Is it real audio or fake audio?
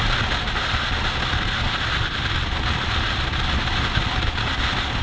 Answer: real